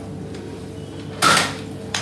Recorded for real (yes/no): yes